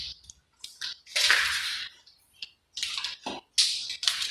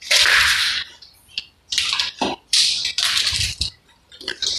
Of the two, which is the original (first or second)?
first